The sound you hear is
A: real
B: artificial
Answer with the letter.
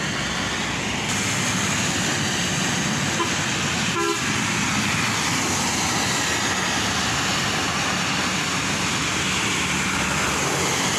A